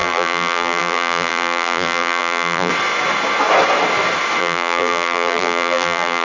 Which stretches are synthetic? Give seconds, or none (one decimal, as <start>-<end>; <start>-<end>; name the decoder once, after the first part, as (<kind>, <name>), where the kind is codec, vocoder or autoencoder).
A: 0.0-2.7 (vocoder, BigVGAN v2); 4.4-6.2